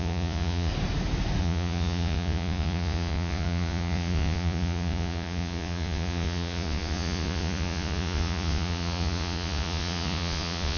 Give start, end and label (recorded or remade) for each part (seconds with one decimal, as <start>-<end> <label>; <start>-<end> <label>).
0.0-0.7 remade; 0.7-1.4 recorded; 1.4-10.8 remade